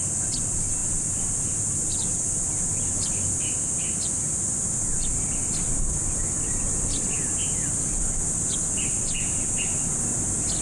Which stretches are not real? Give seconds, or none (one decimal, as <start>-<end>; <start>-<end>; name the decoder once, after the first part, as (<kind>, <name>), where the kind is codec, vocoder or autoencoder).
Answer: none